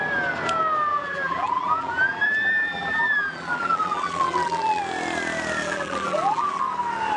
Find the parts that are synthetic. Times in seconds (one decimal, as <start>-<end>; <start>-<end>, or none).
0.9-4.8; 5.6-6.6

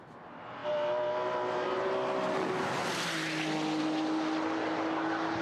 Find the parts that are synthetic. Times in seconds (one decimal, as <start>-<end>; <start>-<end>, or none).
none

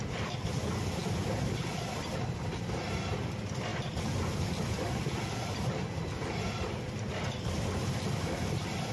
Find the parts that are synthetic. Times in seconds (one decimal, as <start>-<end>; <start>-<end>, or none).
none

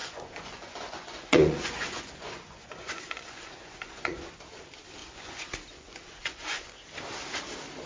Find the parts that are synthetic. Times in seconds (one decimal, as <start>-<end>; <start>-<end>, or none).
0.0-4.3; 5.0-6.7